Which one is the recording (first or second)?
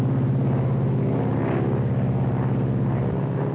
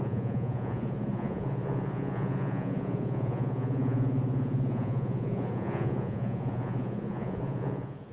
first